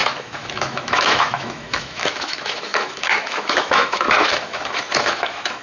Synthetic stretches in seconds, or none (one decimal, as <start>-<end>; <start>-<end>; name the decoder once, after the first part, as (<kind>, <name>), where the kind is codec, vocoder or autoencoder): 0.0-5.6 (autoencoder, DAC-VAE)